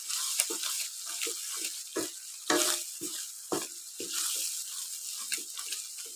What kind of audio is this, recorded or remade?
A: recorded